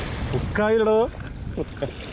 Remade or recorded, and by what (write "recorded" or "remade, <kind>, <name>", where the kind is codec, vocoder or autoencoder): recorded